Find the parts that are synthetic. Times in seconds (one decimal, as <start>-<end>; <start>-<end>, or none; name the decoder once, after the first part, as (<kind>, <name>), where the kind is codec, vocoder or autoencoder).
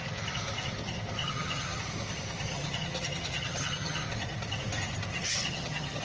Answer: 1.2-1.8 (vocoder, HiFi-GAN); 2.5-4.0; 5.1-6.0